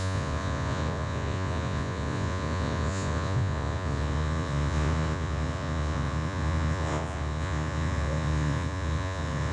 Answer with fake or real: fake